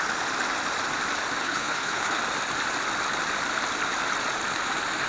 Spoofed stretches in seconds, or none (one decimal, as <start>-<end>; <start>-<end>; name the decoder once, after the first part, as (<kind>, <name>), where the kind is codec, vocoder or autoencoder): 1.4-2.2 (codec, HILCodec)